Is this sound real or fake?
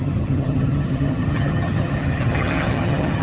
fake